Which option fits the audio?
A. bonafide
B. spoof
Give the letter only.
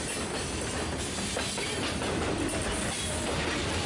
A